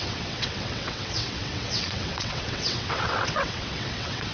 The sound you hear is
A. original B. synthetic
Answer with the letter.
B